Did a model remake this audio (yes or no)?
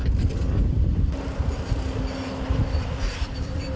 yes